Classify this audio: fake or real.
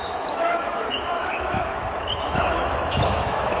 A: fake